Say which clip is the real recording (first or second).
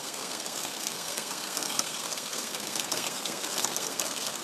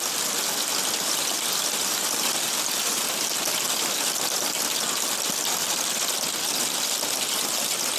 second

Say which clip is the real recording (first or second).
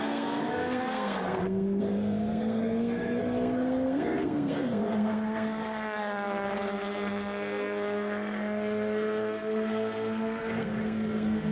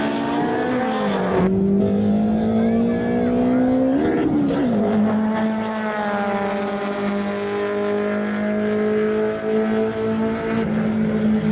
second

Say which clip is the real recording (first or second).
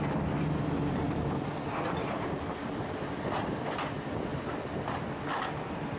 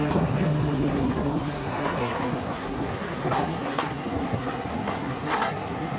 first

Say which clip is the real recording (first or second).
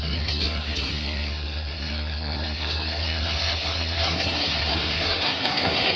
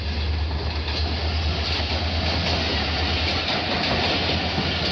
second